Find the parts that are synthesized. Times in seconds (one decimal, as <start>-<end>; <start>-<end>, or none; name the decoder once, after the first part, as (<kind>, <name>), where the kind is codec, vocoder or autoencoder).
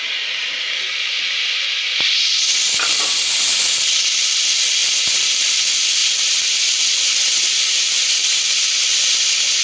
none